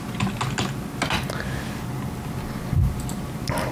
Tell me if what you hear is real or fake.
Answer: real